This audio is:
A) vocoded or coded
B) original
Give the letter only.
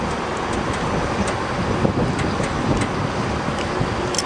B